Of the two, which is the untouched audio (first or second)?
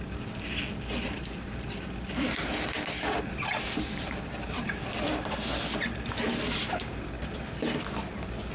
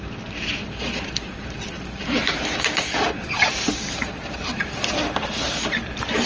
first